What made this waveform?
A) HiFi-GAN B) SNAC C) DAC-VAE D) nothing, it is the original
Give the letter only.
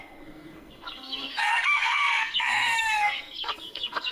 B